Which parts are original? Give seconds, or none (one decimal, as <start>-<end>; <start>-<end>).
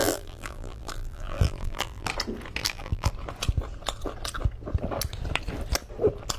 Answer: 2.1-2.6; 3.1-6.4